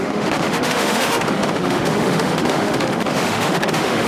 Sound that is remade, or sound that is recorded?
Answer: remade